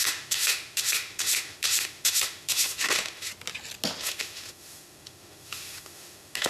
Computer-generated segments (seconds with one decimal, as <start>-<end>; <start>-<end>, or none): 0.0-3.3; 4.0-6.5

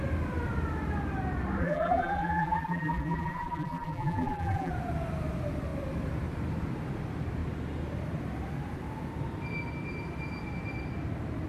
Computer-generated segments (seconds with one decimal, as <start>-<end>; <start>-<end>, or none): 1.6-4.7

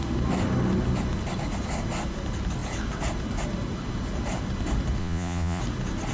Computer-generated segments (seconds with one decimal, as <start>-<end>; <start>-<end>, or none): 5.0-5.6